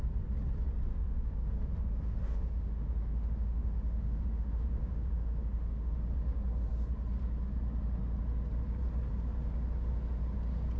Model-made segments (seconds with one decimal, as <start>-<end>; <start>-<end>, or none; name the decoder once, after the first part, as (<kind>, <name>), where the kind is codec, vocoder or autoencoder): 0.9-6.0 (autoencoder, DAC-VAE)